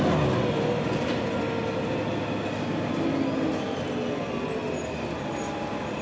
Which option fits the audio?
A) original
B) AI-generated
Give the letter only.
A